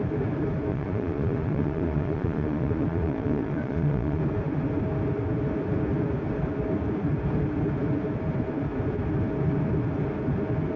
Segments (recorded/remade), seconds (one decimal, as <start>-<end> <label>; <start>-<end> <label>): 0.0-0.7 recorded; 0.7-4.2 remade; 4.2-10.8 recorded